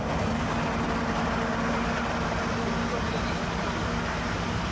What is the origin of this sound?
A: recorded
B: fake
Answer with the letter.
A